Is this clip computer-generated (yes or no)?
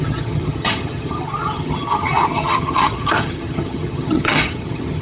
yes